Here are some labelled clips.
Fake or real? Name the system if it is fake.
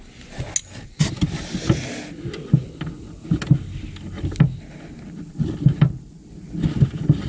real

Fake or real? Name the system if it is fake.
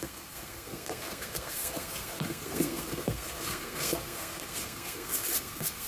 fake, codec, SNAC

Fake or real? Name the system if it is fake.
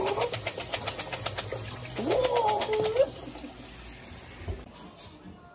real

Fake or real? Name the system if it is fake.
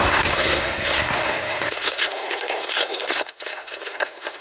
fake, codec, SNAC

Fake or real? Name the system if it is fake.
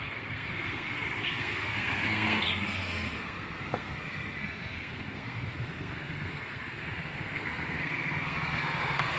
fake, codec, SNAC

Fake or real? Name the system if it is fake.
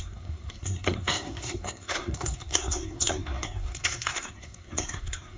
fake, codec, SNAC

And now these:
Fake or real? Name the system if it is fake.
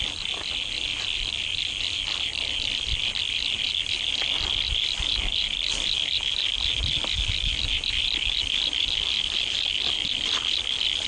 real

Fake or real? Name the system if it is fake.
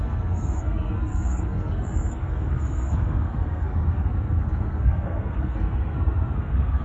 fake, codec, SNAC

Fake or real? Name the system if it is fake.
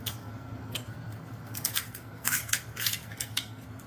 fake, codec, SNAC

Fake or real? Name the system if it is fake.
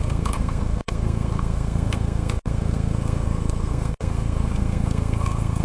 fake, codec, SNAC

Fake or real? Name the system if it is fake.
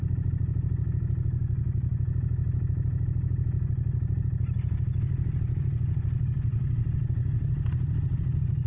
real